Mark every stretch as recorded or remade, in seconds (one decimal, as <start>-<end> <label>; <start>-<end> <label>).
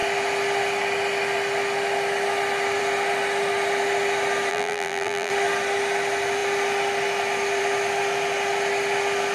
0.0-4.5 recorded; 4.5-5.3 remade; 5.3-9.3 recorded